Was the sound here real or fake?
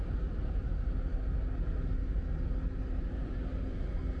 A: real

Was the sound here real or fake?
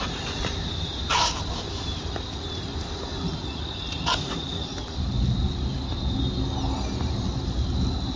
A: real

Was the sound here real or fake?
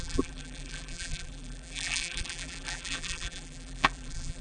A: fake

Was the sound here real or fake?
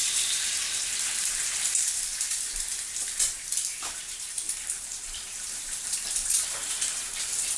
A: fake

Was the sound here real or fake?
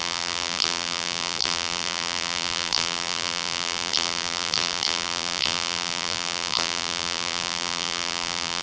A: fake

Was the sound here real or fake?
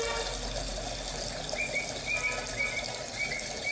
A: real